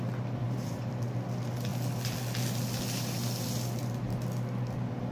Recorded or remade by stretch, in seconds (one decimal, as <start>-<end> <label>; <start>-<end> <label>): 0.0-0.4 recorded; 0.4-0.9 remade; 0.9-5.1 recorded